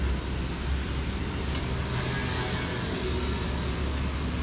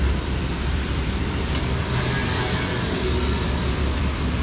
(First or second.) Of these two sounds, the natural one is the first